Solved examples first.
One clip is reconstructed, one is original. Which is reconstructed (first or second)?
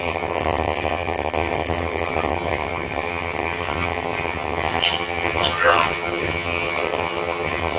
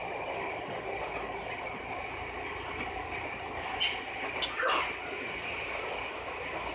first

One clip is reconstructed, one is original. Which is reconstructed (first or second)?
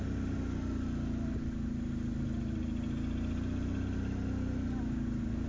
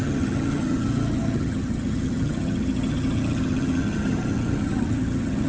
second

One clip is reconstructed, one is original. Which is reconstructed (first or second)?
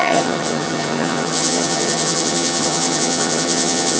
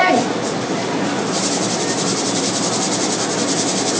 first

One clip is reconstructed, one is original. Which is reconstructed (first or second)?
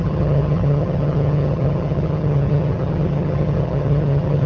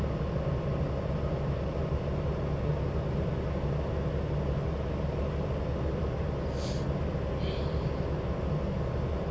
first